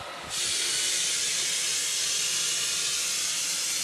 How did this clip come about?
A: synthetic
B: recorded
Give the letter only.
B